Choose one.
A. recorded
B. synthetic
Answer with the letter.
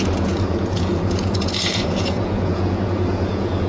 B